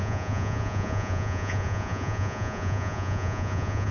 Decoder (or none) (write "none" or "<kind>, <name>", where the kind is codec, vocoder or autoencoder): vocoder, Vocos